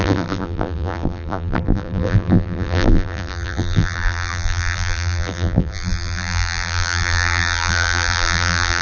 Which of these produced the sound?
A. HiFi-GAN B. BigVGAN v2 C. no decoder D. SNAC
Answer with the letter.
B